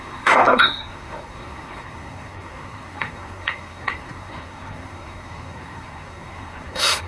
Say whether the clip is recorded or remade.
remade